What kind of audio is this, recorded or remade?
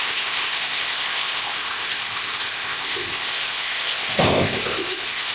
remade